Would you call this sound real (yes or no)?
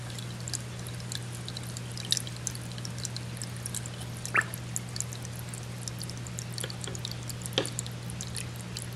yes